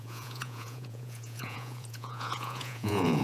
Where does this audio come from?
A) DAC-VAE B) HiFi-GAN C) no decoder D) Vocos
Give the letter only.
D